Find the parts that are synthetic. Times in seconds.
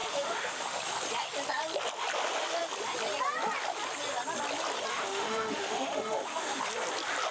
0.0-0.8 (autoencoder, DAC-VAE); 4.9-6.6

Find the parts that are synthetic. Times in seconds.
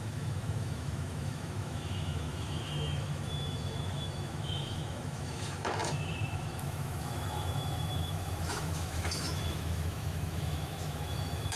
0.0-11.6 (autoencoder, DAC-VAE)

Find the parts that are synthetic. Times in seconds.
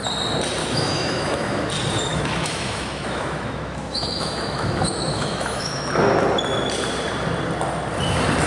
0.6-1.7 (autoencoder, DAC-VAE); 2.1-5.9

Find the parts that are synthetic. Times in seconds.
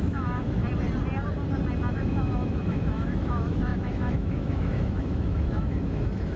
0.0-0.6 (autoencoder, DAC-VAE); 1.9-6.4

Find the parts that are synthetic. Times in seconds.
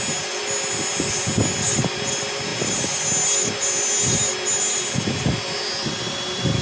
none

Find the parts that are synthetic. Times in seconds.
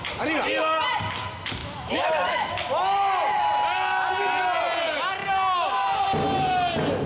1.6-2.5 (autoencoder, DAC-VAE)